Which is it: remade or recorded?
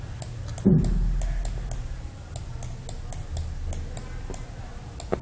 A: recorded